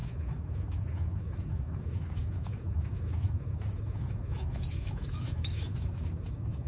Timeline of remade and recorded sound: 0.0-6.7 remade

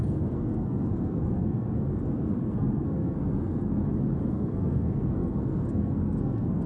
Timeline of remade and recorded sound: 0.0-3.8 remade; 3.8-4.3 recorded; 4.3-6.7 remade

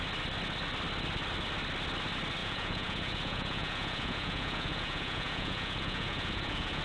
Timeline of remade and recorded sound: 0.0-2.4 recorded; 2.4-6.8 remade